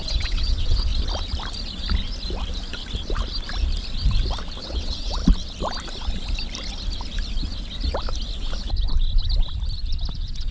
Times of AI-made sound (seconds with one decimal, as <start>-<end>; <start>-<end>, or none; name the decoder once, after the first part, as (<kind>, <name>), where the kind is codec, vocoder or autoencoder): 0.0-0.9 (vocoder, WaveNeXt); 4.6-5.2; 10.1-10.5